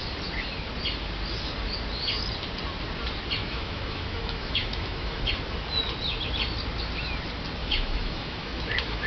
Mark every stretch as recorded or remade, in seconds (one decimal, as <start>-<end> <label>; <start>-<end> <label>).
0.0-3.4 recorded; 3.4-5.2 remade; 5.2-7.6 recorded; 7.6-9.1 remade